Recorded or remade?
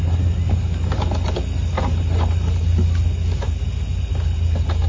recorded